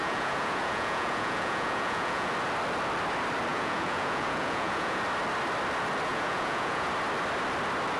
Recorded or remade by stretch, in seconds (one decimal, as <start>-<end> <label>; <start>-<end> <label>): 0.0-2.3 remade; 2.3-3.5 recorded; 3.5-5.0 remade; 5.0-6.1 recorded; 6.1-6.9 remade; 6.9-8.0 recorded